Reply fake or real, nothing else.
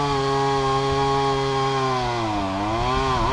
real